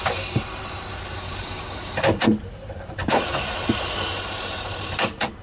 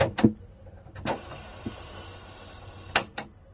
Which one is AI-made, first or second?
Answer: first